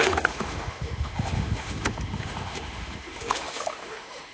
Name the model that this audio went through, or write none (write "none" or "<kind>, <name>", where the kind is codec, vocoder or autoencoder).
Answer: autoencoder, DAC-VAE